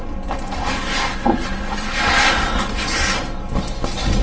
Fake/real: real